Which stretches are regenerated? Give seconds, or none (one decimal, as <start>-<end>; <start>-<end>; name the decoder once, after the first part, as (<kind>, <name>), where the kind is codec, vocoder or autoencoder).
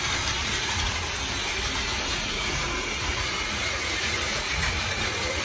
0.4-1.1 (vocoder, Vocos); 1.9-5.4